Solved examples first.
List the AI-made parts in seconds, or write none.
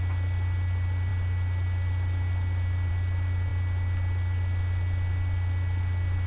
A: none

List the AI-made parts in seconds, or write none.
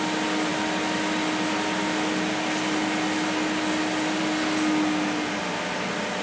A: none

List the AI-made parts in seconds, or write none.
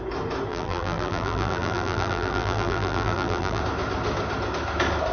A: 0.5-3.6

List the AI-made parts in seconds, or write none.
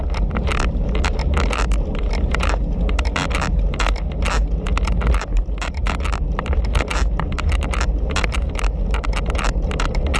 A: none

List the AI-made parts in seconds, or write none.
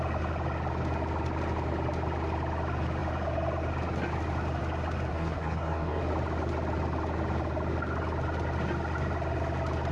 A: 5.1-6.0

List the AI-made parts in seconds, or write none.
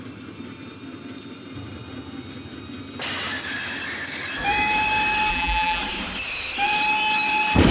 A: 5.3-5.8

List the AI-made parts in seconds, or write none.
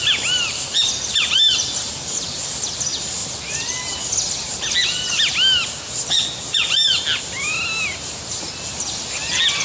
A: none